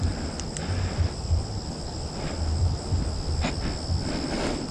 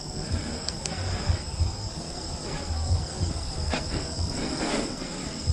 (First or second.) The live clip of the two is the first